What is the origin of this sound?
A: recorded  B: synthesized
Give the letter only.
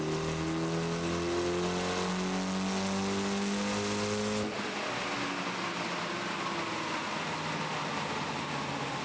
A